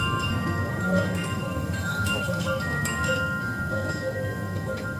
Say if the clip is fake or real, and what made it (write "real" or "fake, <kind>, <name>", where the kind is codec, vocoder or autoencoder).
fake, codec, SNAC